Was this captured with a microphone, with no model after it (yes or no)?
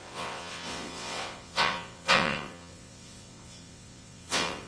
no